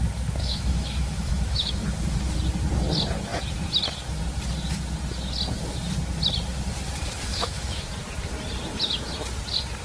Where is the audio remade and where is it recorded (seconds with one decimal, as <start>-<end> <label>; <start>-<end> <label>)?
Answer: 0.0-0.4 recorded; 0.4-1.7 remade; 1.7-7.3 recorded; 7.3-7.9 remade; 7.9-9.8 recorded